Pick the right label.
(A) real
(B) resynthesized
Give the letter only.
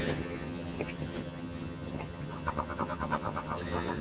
B